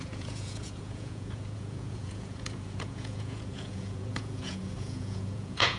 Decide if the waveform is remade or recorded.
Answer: remade